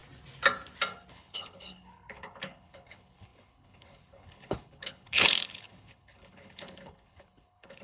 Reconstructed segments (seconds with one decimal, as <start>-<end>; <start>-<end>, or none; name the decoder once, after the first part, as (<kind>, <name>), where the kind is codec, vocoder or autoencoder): 1.1-7.8 (codec, HILCodec)